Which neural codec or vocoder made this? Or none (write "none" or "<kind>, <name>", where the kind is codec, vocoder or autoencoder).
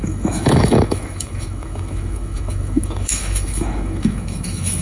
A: autoencoder, DAC-VAE